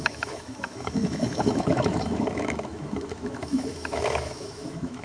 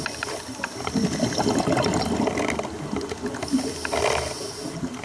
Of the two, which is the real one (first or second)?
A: second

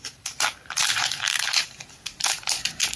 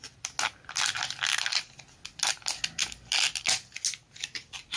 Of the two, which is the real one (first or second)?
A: second